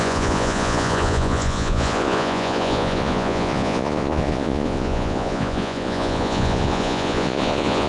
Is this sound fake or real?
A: fake